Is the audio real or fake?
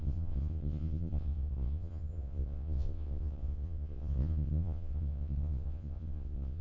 fake